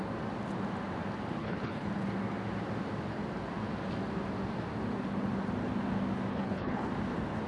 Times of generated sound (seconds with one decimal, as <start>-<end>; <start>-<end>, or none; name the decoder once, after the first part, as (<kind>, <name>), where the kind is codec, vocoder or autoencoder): 1.4-1.9 (codec, HILCodec); 6.3-6.9